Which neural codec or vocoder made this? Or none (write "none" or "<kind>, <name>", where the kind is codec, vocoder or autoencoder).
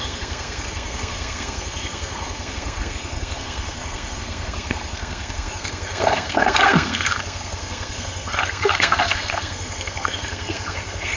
codec, SNAC